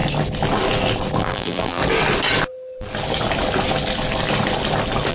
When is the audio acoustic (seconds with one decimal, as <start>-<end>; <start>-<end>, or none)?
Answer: 0.0-1.2; 1.8-5.1